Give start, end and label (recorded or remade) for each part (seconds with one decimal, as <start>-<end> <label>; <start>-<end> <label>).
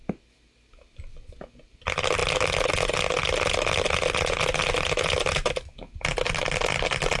0.0-7.2 recorded